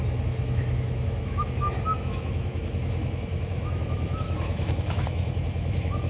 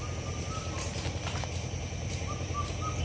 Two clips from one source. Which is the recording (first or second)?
second